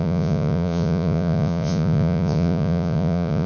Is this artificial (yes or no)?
yes